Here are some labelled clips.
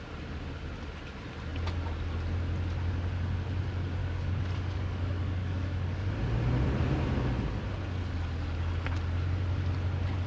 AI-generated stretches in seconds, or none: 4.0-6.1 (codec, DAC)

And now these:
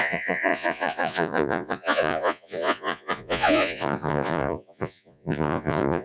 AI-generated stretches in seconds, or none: 0.0-6.0 (vocoder, Vocos)

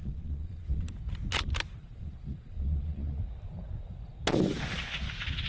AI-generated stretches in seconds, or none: 0.0-0.9 (vocoder, Vocos); 1.8-3.2

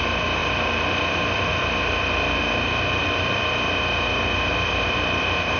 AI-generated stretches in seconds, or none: 0.4-3.4 (vocoder, BigVGAN v2); 4.5-5.6

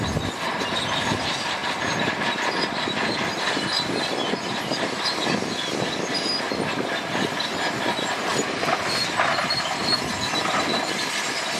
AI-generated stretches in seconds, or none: none

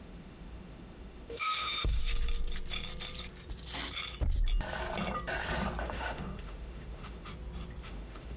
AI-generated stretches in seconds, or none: 0.0-2.0 (autoencoder, DAC-VAE); 5.8-7.3; 7.8-8.4

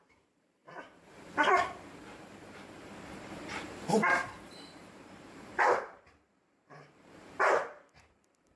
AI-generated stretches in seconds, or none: 0.0-8.6 (vocoder, BigVGAN v2)

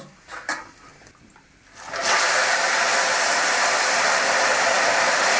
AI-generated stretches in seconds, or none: none